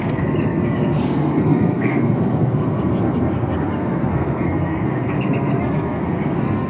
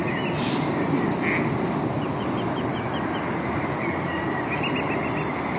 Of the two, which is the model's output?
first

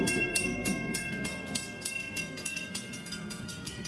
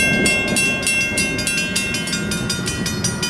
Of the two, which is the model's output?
first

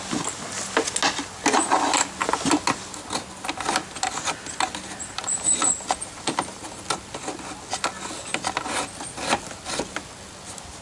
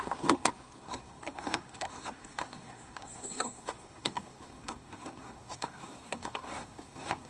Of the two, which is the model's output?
second